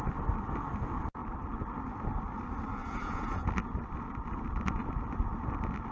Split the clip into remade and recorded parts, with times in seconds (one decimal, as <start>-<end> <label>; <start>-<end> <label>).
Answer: 0.0-2.8 recorded; 2.8-3.5 remade; 3.5-5.9 recorded